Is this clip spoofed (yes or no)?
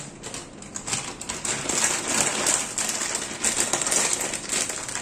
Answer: no